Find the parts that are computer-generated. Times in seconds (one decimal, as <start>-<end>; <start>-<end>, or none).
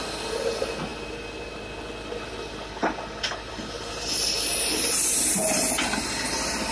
none